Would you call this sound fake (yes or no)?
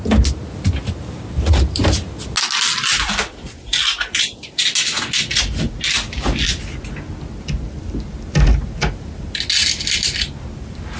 no